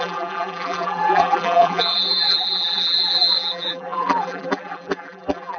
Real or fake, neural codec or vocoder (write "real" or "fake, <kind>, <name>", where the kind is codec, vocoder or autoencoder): fake, vocoder, BigVGAN v2